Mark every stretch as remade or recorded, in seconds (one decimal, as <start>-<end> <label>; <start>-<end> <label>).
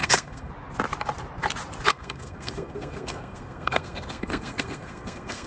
0.0-0.5 remade; 0.5-1.9 recorded; 1.9-5.5 remade